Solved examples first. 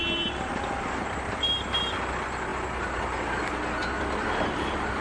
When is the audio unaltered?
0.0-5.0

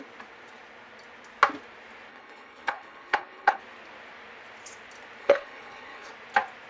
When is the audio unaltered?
0.0-2.1; 3.6-5.2; 6.1-6.7